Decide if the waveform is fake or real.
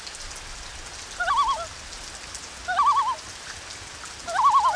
real